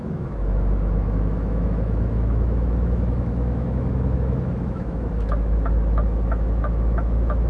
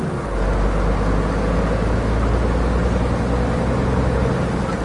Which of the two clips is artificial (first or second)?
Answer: first